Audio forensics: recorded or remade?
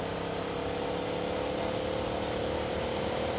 recorded